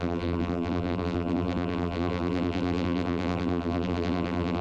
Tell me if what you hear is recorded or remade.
remade